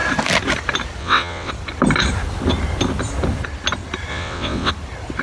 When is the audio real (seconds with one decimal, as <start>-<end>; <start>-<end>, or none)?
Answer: 0.0-1.0; 1.5-4.1; 4.7-5.2